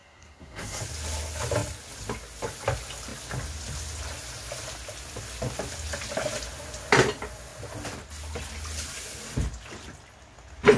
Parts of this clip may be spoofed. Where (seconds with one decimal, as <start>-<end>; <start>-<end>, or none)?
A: 0.0-0.8